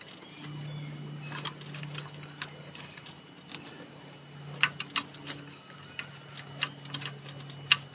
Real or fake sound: real